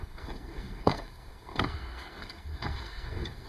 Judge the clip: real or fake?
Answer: fake